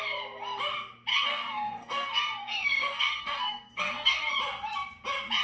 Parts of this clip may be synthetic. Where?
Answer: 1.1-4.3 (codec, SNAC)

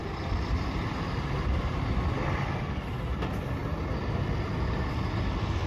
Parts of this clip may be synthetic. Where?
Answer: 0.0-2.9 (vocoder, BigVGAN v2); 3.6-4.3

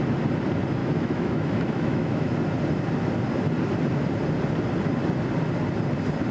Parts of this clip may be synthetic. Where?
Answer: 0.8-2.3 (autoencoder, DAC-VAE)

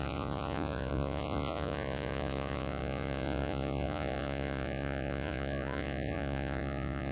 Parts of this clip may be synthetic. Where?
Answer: 0.0-7.1 (vocoder, Vocos)

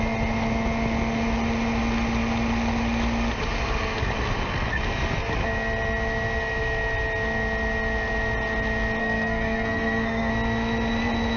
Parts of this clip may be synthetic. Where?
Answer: 9.0-10.3 (codec, SNAC)

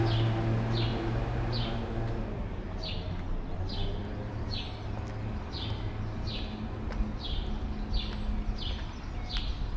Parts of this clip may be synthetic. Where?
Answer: 0.9-1.8 (vocoder, BigVGAN v2); 4.0-4.5

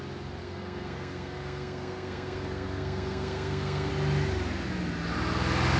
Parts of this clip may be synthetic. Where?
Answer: 0.4-3.9 (codec, SNAC)